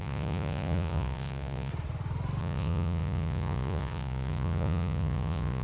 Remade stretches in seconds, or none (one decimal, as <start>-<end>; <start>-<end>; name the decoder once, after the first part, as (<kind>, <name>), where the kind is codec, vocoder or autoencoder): 0.0-1.7 (vocoder, Vocos); 2.4-5.6